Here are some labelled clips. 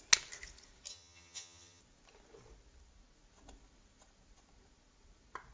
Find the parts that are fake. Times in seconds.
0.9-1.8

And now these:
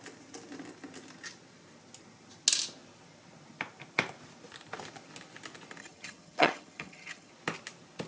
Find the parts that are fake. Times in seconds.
5.8-7.3